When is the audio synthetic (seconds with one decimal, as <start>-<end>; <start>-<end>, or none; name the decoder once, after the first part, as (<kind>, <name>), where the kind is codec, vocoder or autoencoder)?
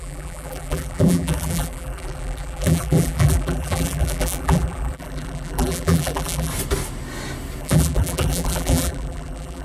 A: 0.0-6.5 (vocoder, BigVGAN v2); 7.6-9.6